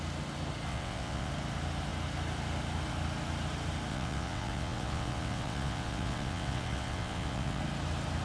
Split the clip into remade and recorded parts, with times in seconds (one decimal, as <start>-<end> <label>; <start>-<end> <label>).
0.0-0.7 recorded; 0.7-1.3 remade; 1.3-3.9 recorded; 3.9-7.6 remade; 7.6-8.2 recorded